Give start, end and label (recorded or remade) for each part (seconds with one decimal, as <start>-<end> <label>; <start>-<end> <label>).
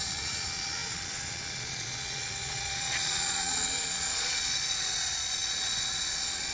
0.0-6.5 remade